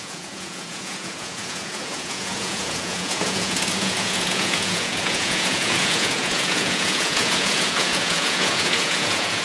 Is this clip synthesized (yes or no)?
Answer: yes